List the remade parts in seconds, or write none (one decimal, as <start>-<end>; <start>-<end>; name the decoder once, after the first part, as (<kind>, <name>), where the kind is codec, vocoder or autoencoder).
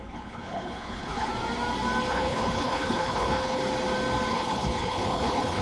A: 0.0-1.3 (codec, HILCodec); 2.1-3.6; 4.3-5.6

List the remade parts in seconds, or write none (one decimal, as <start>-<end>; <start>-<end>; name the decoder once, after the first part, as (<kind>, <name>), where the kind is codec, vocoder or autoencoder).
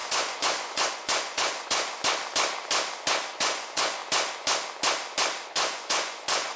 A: 0.0-2.0 (vocoder, Vocos); 3.3-4.0; 5.5-6.6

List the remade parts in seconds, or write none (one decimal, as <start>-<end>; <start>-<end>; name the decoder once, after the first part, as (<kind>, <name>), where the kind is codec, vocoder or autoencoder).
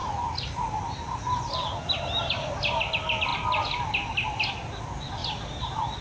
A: none